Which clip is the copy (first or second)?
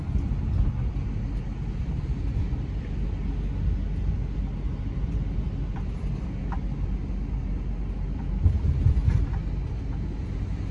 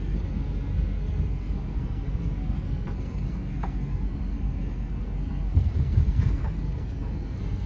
second